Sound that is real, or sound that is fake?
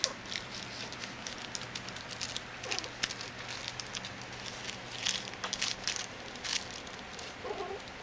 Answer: real